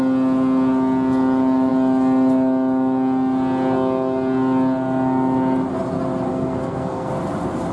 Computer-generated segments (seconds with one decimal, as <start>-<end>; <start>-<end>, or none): 6.3-7.1